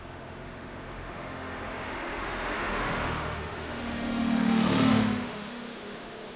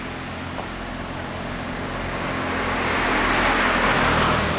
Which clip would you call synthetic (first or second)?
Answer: first